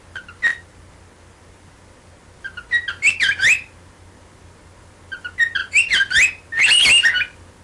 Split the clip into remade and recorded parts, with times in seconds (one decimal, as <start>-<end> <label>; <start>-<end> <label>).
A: 0.0-7.6 recorded